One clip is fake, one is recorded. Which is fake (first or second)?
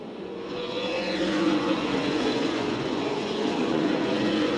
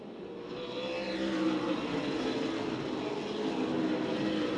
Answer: first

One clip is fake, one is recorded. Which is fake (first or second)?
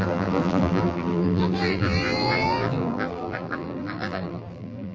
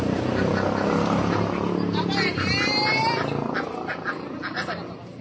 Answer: first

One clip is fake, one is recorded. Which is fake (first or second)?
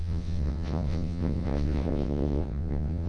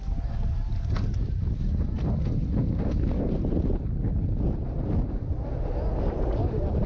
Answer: first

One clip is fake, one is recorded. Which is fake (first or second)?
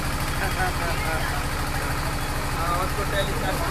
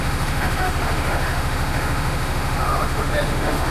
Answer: second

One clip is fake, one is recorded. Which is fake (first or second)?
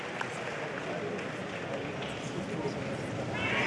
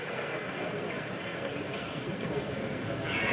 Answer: second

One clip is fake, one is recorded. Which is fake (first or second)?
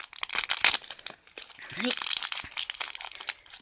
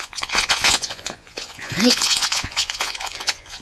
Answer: second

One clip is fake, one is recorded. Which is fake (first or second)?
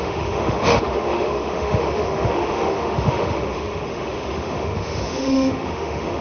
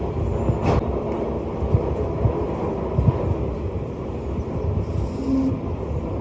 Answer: first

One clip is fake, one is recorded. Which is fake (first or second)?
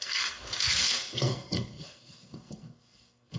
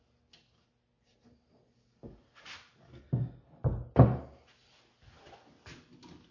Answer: first